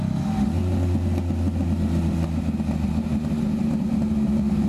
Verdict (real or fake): real